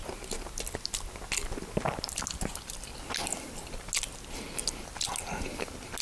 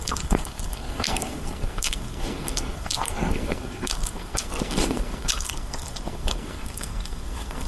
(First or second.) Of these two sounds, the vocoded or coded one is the second